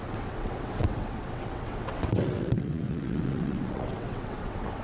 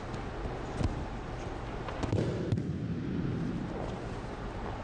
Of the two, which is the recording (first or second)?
second